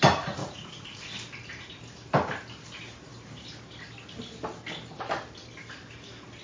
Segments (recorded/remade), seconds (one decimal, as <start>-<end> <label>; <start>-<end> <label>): 0.0-0.4 recorded; 0.4-1.0 remade; 1.0-6.4 recorded